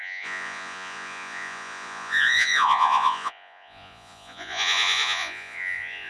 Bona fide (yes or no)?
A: no